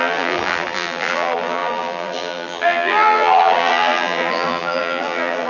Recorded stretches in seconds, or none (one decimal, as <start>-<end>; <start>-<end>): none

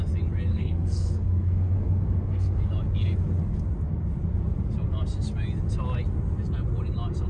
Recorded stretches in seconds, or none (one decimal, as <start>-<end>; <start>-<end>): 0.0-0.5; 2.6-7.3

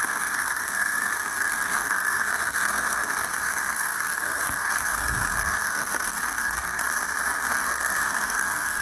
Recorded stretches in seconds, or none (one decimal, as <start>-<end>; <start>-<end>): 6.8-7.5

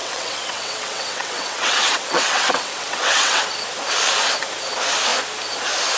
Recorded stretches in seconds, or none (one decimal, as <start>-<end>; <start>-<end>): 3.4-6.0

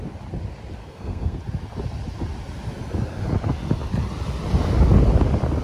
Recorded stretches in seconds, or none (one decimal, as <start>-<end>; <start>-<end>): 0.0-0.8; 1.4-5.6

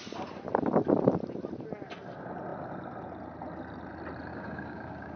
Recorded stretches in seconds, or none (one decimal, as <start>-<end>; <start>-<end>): 0.0-4.3

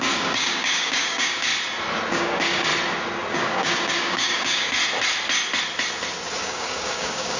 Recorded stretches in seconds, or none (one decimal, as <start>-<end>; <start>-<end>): 1.5-2.1; 2.7-3.3; 4.8-6.4

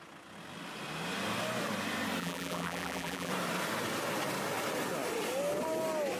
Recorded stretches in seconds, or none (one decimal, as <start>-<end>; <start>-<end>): 0.0-2.2; 3.3-6.2